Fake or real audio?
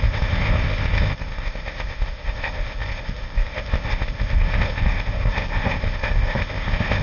fake